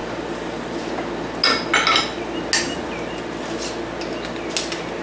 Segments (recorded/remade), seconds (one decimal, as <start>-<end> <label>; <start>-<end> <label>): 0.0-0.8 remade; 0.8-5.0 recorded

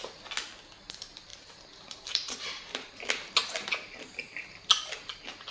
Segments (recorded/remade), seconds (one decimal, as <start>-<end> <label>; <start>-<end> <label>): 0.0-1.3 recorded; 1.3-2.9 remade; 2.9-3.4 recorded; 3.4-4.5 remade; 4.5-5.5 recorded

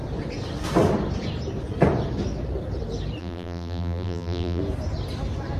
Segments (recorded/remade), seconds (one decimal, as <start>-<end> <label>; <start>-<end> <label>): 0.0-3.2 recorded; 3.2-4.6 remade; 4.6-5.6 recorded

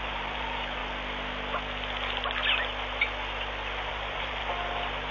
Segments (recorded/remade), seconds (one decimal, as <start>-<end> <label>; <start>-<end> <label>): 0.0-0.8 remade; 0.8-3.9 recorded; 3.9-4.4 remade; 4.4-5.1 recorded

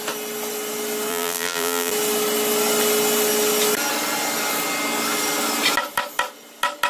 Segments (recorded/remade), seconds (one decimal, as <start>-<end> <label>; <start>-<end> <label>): 0.0-1.1 recorded; 1.1-1.9 remade; 1.9-6.9 recorded